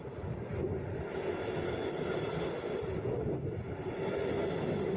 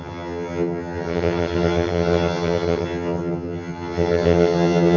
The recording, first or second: first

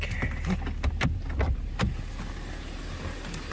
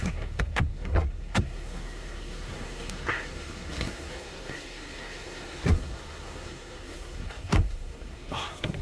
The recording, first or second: first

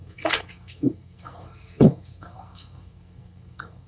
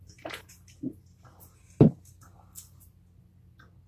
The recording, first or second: second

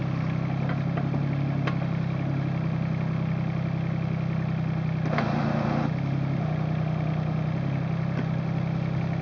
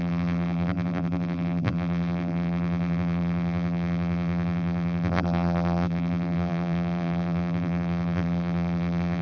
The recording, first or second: first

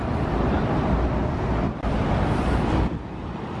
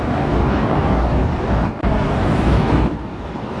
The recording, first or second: first